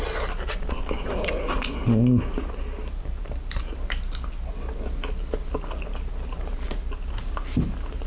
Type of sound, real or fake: real